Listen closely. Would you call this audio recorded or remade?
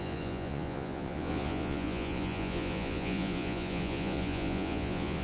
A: remade